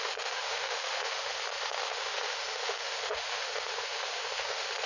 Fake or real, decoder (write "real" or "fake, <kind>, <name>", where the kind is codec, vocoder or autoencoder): fake, autoencoder, DAC-VAE